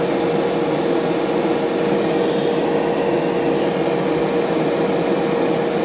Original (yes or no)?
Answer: yes